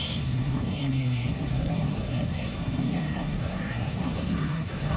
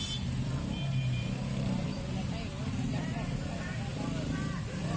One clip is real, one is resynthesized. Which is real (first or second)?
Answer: second